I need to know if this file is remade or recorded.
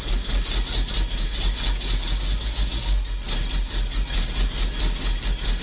recorded